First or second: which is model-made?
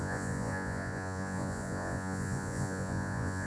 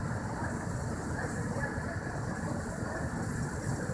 first